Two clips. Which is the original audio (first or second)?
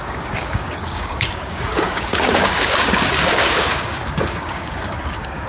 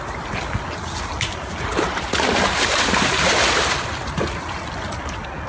second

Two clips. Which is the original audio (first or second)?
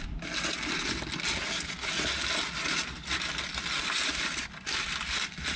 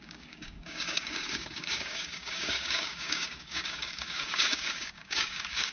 first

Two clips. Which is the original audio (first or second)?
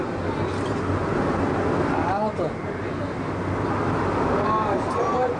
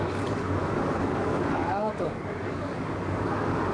first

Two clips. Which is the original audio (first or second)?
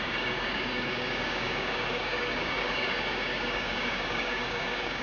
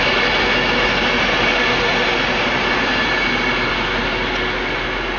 second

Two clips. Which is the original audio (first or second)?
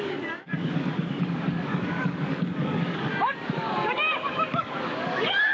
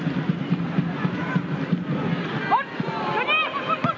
second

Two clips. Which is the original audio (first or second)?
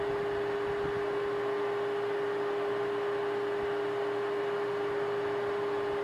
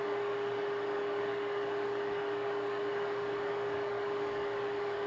first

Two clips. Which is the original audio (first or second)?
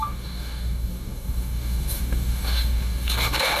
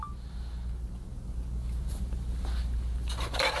second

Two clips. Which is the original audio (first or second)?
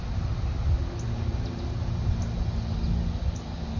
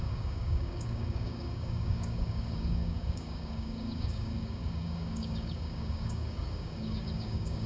first